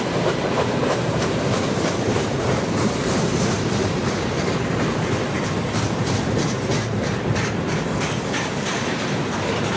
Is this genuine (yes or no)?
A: no